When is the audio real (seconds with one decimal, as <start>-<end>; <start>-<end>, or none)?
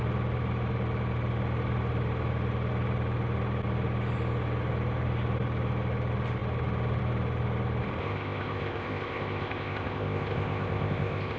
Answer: 0.0-8.0